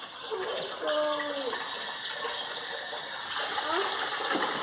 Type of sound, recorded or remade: recorded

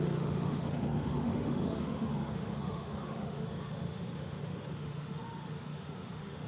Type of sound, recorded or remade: remade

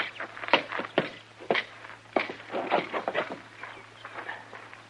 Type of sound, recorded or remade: recorded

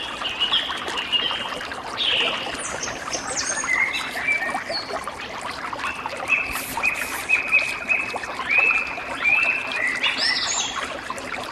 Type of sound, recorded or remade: recorded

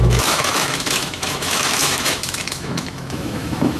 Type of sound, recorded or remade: remade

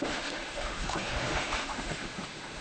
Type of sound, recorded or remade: remade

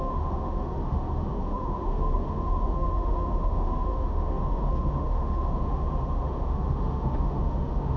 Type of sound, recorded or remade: remade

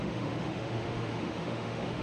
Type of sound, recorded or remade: remade